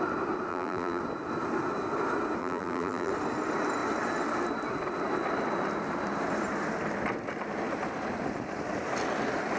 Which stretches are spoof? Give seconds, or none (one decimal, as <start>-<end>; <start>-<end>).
0.5-1.0; 2.4-3.1